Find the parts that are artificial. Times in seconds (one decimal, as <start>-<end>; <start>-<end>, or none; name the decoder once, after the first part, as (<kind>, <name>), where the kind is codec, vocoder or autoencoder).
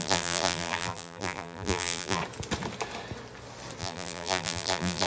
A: 0.0-2.2 (vocoder, BigVGAN v2); 3.8-5.1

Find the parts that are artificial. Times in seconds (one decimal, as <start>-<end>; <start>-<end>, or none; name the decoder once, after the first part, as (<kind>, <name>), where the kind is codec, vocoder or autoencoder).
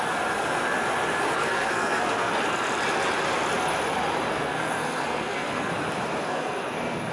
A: 1.4-2.3 (codec, SNAC); 4.3-5.7; 6.3-7.1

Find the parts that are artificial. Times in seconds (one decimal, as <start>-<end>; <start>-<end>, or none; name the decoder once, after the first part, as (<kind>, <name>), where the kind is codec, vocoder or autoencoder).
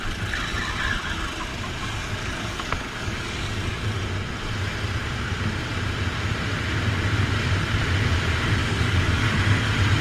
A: 1.5-4.0 (codec, DAC); 8.6-9.4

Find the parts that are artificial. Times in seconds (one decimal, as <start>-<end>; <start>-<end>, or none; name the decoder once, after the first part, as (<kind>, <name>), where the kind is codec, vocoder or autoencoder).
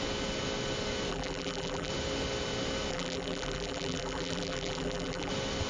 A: 1.1-1.9 (vocoder, BigVGAN v2); 2.9-5.3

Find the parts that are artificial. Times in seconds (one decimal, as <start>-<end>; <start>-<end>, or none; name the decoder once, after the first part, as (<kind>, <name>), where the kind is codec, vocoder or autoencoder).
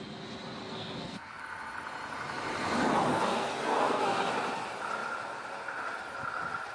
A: 0.6-1.4 (codec, SNAC); 3.1-4.3